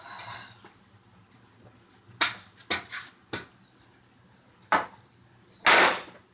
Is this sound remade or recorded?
recorded